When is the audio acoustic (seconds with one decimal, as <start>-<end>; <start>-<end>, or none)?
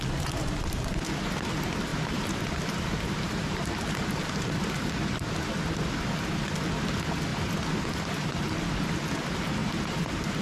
0.0-1.9; 4.3-9.6